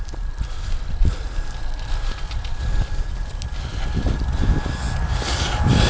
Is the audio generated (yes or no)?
no